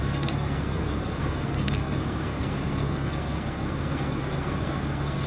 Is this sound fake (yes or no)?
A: yes